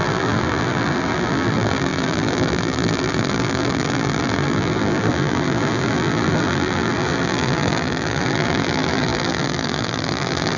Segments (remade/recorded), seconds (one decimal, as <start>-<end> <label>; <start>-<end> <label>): 0.0-10.6 remade

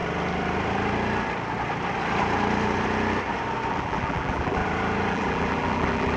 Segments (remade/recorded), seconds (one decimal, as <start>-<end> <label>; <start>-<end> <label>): 0.0-3.7 recorded; 3.7-4.6 remade; 4.6-5.1 recorded; 5.1-6.2 remade